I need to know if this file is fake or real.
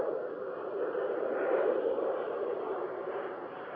fake